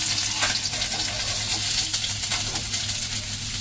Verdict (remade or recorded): recorded